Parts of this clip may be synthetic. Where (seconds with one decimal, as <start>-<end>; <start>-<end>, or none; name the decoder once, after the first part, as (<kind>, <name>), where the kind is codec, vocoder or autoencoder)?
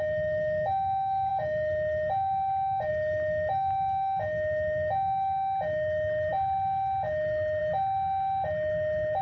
none